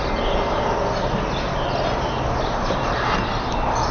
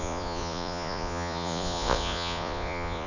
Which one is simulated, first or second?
second